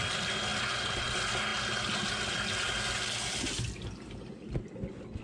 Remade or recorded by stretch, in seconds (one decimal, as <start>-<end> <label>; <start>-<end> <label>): 0.0-5.2 recorded